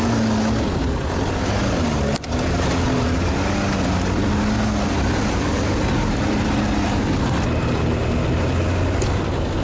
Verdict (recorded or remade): recorded